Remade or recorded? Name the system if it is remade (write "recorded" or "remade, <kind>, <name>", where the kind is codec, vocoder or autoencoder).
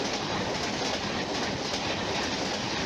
recorded